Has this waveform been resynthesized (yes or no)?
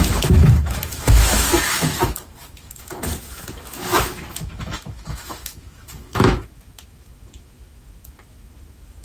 yes